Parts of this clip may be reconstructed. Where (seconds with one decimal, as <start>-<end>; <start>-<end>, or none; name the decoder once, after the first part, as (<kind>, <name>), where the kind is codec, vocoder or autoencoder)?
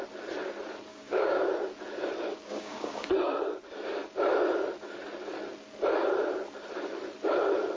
0.9-1.4 (codec, DAC); 2.5-3.1